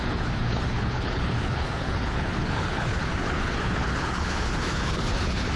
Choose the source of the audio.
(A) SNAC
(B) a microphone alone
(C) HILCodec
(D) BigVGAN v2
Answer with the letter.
C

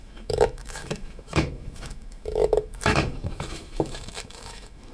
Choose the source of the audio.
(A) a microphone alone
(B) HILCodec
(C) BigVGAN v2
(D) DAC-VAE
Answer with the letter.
D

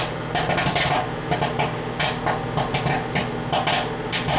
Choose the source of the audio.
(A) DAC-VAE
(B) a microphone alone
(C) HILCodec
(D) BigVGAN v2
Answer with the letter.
B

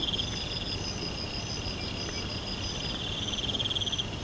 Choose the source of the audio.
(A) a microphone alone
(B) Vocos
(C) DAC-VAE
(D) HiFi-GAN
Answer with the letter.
A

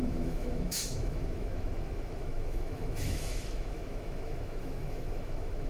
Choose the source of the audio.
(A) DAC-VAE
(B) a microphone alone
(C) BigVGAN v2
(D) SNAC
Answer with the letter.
A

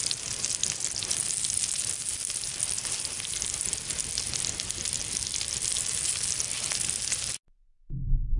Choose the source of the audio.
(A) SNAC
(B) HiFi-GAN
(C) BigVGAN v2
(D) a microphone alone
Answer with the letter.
D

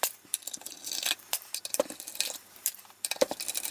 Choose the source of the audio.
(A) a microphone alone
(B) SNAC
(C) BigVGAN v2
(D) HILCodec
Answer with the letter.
C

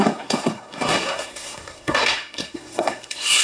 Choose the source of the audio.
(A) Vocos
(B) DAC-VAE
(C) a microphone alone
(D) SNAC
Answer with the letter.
D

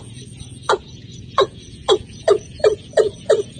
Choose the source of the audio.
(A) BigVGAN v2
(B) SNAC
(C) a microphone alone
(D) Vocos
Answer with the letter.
D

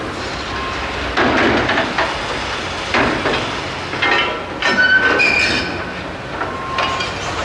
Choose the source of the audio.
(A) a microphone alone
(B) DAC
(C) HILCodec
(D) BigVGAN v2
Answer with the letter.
A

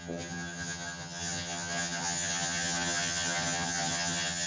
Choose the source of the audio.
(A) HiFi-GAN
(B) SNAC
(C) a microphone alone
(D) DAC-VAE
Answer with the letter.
A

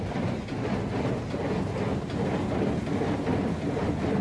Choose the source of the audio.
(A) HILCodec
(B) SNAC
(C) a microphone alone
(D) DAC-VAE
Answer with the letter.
C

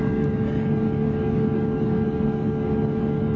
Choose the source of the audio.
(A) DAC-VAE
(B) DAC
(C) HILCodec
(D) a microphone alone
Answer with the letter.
B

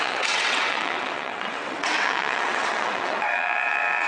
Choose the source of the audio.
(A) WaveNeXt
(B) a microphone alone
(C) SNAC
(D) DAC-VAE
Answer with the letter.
A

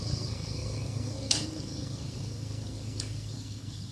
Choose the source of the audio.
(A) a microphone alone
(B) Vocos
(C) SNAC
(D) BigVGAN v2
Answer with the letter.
C